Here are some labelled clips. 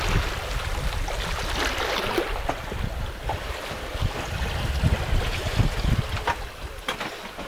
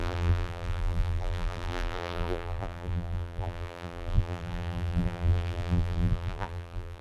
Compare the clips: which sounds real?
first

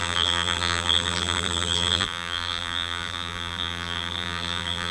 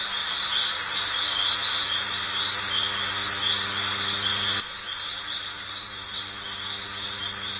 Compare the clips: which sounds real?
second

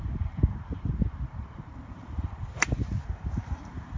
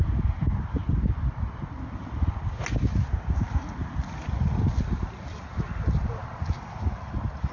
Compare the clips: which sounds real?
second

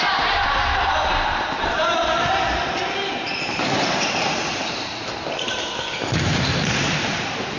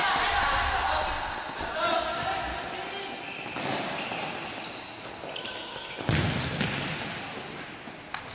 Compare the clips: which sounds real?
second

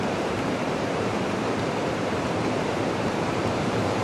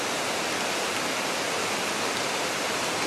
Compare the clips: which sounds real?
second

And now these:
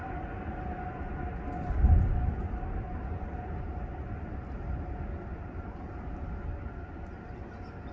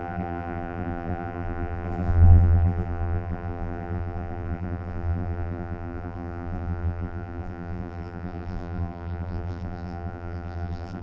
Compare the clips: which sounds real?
first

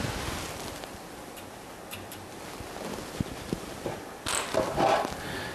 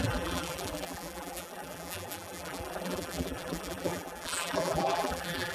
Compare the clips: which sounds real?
first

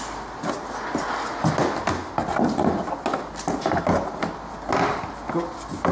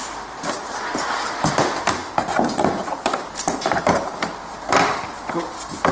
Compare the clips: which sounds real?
first